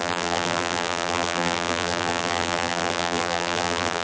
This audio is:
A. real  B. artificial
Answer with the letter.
B